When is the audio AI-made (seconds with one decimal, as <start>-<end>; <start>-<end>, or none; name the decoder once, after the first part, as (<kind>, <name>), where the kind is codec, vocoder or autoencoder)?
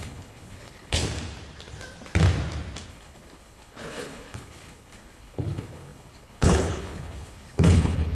0.0-1.0 (codec, HILCodec); 2.9-8.1